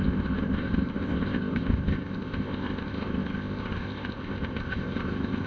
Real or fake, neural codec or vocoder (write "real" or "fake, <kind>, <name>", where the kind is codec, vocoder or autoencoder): fake, codec, ZipCodec